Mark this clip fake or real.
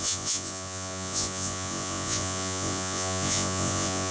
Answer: fake